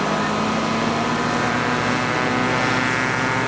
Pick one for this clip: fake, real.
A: real